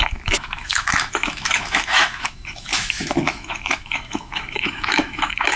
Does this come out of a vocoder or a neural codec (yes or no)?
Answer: yes